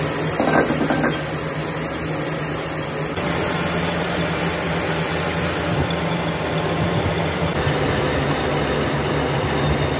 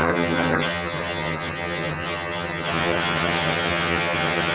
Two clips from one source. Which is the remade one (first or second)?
second